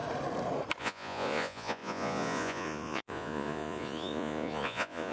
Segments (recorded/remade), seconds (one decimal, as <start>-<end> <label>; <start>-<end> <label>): 0.0-0.8 recorded; 0.8-5.1 remade